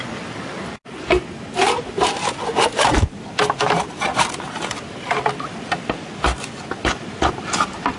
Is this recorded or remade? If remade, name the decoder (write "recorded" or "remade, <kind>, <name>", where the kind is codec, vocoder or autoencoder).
recorded